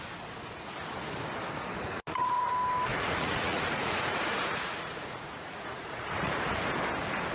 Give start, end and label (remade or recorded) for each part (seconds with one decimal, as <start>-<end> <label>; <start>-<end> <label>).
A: 0.0-1.7 recorded; 1.7-2.5 remade; 2.5-2.9 recorded; 2.9-6.4 remade; 6.4-7.3 recorded